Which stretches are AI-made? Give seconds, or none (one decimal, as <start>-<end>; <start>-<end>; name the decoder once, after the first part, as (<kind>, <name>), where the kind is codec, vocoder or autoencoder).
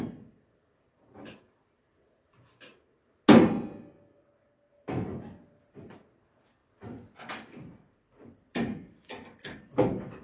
0.0-2.7 (vocoder, BigVGAN v2); 5.2-10.2